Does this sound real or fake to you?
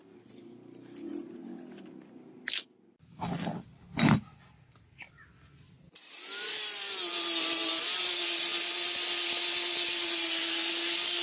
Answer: real